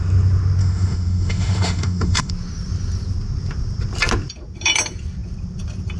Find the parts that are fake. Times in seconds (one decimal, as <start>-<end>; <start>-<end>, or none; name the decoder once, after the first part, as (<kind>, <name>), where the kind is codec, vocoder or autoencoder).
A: 0.6-2.3 (autoencoder, DAC-VAE)